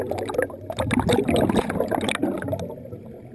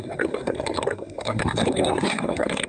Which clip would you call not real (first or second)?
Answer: second